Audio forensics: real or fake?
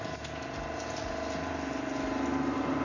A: real